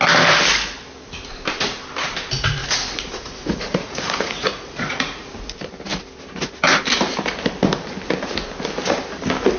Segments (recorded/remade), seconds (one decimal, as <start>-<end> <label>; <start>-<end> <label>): 0.0-2.6 recorded; 2.6-5.3 remade; 5.3-9.6 recorded